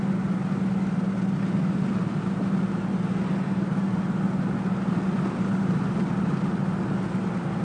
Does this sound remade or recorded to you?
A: recorded